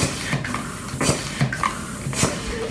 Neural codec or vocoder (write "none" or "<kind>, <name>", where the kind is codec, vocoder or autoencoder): none